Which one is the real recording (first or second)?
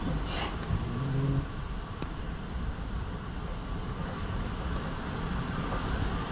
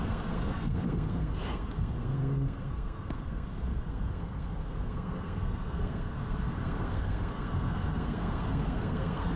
first